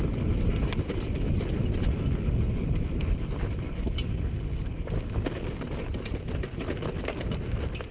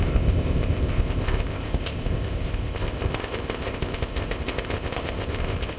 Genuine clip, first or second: first